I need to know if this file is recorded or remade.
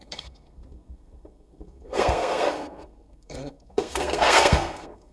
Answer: remade